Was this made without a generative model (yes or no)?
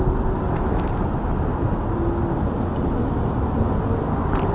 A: yes